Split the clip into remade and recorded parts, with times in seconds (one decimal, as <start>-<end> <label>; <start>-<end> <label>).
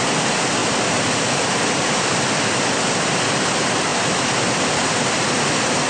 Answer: 0.0-0.6 recorded; 0.6-2.3 remade; 2.3-5.9 recorded